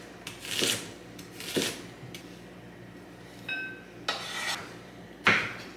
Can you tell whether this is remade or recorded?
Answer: recorded